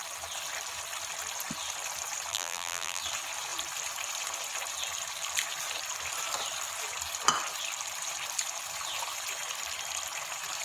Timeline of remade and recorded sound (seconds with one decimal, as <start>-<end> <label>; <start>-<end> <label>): 0.0-2.3 recorded; 2.3-3.0 remade; 3.0-10.6 recorded